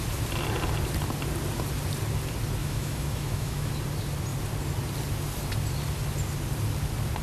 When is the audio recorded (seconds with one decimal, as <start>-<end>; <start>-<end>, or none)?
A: 0.0-2.6; 3.7-7.2